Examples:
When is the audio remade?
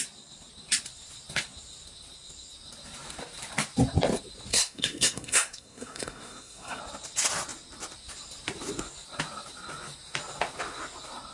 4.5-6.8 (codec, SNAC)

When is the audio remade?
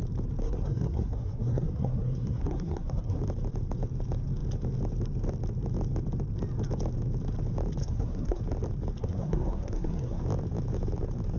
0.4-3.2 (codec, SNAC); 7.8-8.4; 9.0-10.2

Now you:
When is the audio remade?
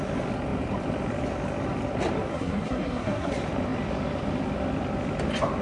2.3-3.3 (codec, SNAC)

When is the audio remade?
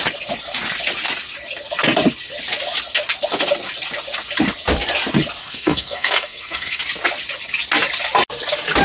5.4-6.8 (codec, SNAC)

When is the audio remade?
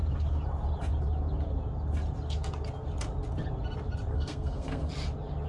4.1-4.9 (codec, SNAC)